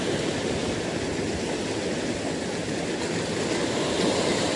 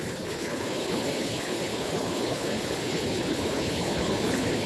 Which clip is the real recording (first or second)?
first